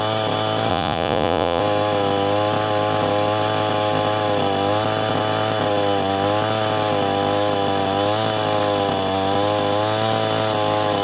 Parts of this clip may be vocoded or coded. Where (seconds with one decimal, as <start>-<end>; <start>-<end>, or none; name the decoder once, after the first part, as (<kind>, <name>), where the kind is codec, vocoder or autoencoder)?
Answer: 0.7-1.6 (vocoder, Vocos)